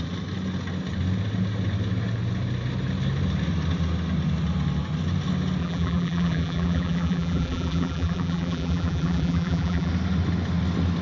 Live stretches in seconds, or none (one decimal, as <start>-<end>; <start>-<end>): 0.0-5.6; 9.9-11.0